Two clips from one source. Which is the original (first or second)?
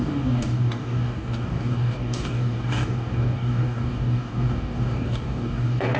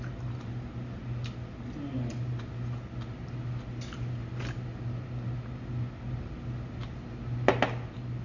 second